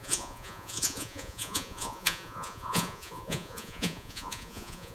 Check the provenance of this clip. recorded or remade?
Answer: remade